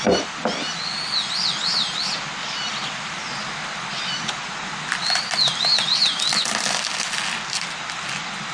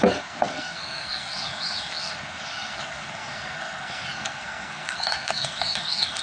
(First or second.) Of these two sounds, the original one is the first